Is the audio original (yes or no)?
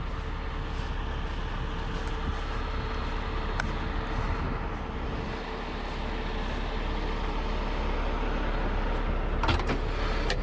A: yes